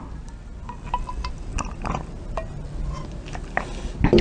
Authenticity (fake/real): real